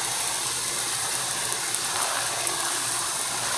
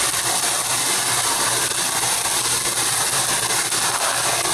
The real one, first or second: second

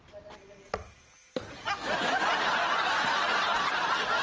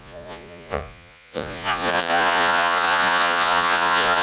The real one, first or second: first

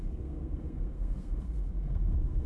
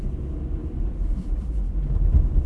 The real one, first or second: second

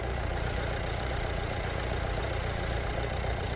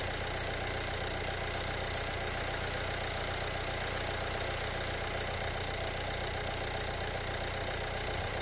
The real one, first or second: second